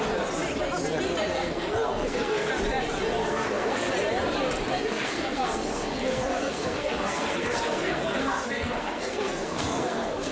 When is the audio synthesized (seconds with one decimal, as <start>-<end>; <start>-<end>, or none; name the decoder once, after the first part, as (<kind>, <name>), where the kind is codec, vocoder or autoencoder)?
1.3-2.5 (codec, SNAC); 3.2-3.9; 4.9-10.3